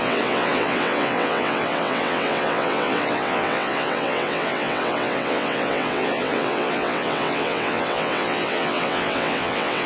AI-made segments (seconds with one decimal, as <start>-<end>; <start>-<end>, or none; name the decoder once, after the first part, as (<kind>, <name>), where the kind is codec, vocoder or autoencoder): 0.0-9.9 (vocoder, WaveNeXt)